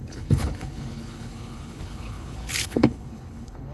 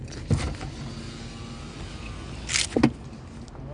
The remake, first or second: first